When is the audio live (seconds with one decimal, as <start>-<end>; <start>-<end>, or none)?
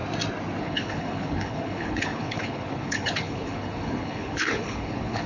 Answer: 0.0-0.6